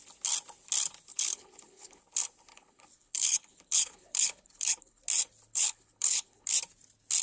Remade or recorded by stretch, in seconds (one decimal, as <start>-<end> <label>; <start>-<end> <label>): 0.0-1.1 recorded; 1.1-2.0 remade; 2.0-2.5 recorded; 2.5-5.0 remade; 5.0-5.5 recorded; 5.5-6.5 remade; 6.5-7.2 recorded